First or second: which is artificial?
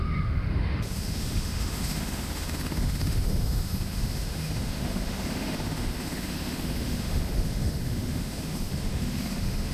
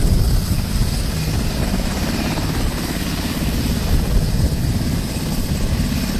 first